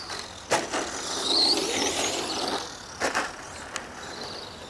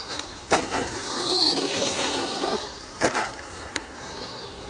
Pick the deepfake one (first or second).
second